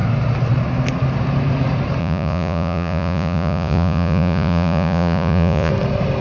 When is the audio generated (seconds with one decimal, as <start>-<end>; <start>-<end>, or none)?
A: 2.0-5.7